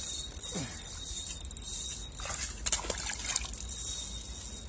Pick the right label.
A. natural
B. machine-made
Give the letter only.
A